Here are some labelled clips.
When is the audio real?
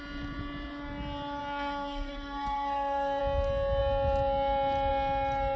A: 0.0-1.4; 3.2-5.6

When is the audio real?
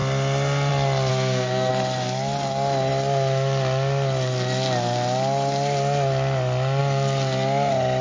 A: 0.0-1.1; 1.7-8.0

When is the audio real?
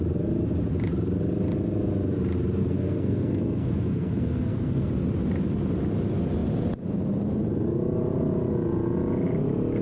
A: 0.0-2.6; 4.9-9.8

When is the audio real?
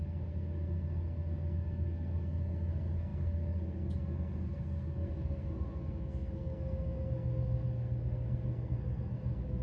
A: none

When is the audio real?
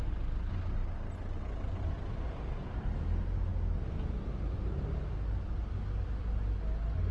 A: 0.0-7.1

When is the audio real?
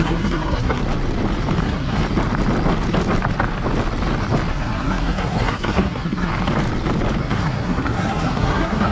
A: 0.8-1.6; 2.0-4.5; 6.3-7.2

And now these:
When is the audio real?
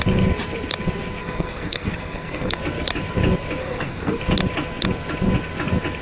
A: 0.0-1.2; 2.6-3.6; 4.2-6.0